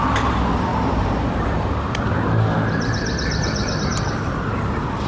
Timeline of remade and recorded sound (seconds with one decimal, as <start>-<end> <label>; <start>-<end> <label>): 0.0-0.7 recorded; 0.7-3.8 remade; 3.8-5.1 recorded